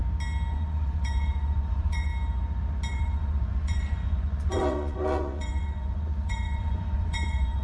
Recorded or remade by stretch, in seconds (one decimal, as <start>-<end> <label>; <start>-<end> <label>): 0.0-0.5 recorded; 0.5-2.1 remade; 2.1-2.9 recorded; 2.9-7.6 remade